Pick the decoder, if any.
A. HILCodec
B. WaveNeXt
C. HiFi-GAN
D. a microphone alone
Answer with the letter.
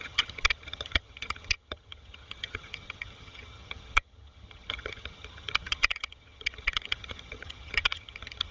C